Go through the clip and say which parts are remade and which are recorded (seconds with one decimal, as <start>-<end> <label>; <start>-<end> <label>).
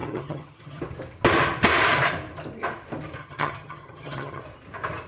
0.0-0.8 remade; 0.8-3.2 recorded; 3.2-4.4 remade; 4.4-5.1 recorded